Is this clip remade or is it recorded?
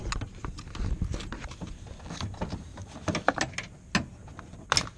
recorded